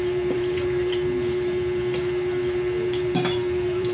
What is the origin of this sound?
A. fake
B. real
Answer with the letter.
A